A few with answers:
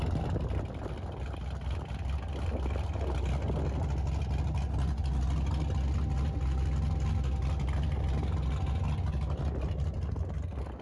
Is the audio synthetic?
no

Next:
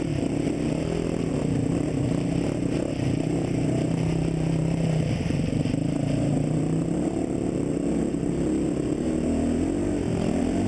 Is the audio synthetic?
no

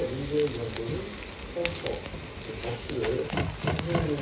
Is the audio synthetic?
no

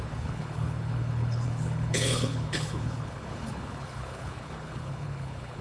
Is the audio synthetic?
yes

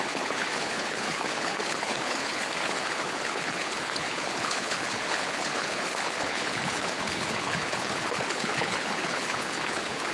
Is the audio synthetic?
yes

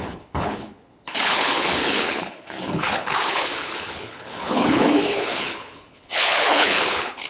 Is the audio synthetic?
yes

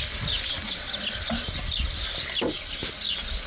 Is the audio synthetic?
no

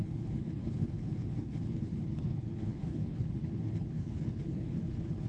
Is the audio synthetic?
yes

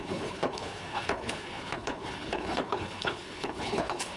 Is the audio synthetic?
yes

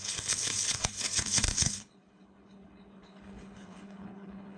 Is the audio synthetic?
yes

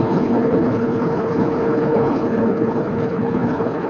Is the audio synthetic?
yes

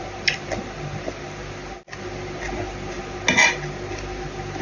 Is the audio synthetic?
no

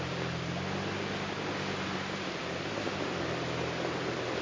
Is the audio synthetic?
no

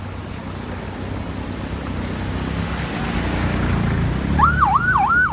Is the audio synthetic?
no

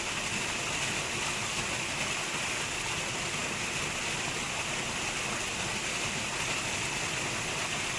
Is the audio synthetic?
no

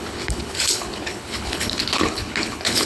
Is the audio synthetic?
yes